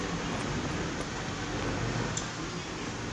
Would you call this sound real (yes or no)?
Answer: yes